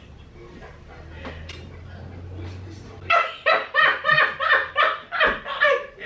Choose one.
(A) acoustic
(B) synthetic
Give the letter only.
B